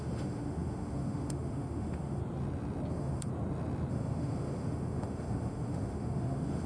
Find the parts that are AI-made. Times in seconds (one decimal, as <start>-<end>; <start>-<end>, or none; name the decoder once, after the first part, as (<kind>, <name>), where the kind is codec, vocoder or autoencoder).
0.0-2.2 (autoencoder, DAC-VAE); 2.9-3.3; 3.9-6.7